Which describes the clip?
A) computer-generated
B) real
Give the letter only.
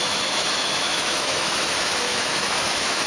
A